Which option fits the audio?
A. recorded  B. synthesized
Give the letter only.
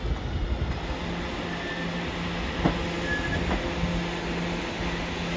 A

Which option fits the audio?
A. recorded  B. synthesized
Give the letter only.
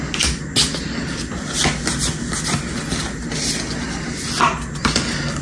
A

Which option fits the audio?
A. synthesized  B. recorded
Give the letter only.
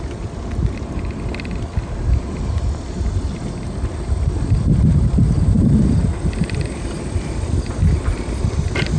B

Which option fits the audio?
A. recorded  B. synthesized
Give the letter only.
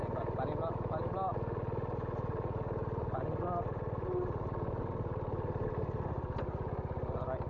A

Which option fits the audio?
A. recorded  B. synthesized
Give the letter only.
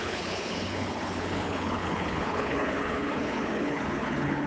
B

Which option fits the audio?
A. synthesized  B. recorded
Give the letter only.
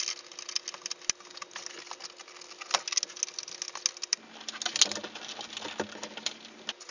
B